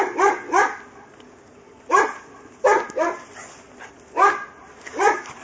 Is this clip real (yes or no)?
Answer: yes